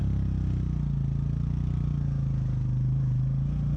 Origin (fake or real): real